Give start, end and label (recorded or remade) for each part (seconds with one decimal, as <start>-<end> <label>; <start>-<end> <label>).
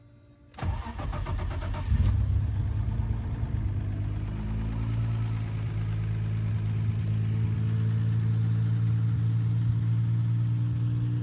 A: 0.0-11.2 recorded